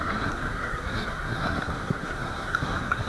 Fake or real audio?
fake